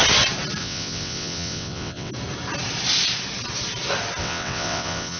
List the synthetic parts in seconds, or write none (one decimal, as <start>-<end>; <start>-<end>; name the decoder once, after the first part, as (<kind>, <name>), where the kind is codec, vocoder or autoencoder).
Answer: 0.6-2.1 (vocoder, WaveNeXt); 4.2-5.2